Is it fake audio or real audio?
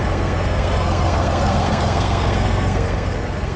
fake